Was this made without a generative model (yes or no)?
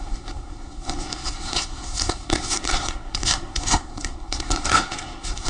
no